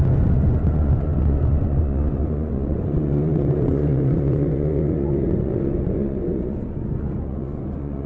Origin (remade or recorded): remade